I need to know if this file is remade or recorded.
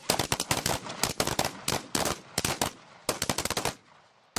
recorded